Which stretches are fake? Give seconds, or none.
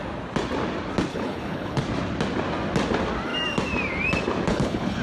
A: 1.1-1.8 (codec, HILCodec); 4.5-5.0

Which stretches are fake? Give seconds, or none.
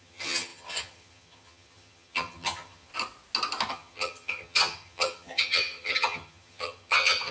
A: 0.0-2.9 (vocoder, HiFi-GAN); 3.7-7.3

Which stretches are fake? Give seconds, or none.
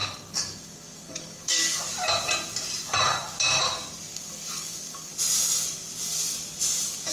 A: 0.0-1.8 (codec, DAC); 4.1-5.1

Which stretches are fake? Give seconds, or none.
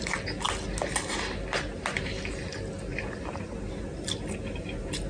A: 2.9-3.7 (vocoder, BigVGAN v2)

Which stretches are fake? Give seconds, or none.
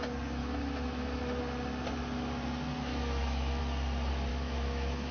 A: 0.4-1.4 (autoencoder, DAC-VAE); 2.9-3.6; 4.3-5.1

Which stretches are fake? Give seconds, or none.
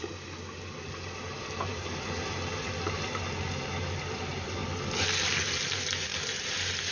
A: 2.5-3.2 (vocoder, BigVGAN v2); 4.6-5.6